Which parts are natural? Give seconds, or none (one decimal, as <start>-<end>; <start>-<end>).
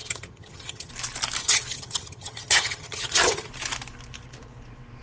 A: 0.9-1.4; 3.5-5.0